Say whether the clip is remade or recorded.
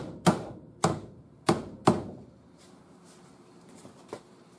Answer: remade